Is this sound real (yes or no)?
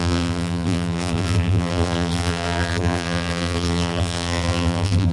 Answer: no